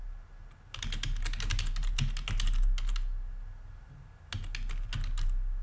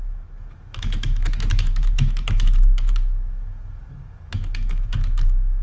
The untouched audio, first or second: first